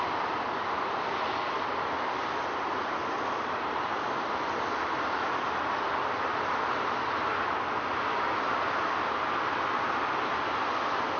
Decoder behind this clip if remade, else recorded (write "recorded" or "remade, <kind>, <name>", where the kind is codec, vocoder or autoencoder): recorded